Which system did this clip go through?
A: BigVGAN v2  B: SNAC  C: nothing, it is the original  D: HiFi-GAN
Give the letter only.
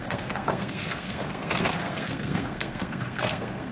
B